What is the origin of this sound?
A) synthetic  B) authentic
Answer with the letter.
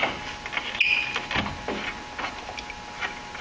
B